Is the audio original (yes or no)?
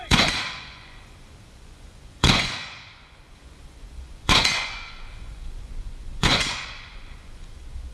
no